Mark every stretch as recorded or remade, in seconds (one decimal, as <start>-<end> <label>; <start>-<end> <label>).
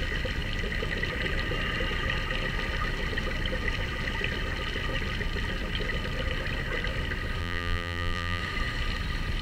0.0-7.4 recorded; 7.4-8.4 remade; 8.4-9.4 recorded